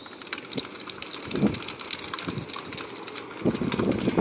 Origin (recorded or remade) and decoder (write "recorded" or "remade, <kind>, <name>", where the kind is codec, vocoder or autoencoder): recorded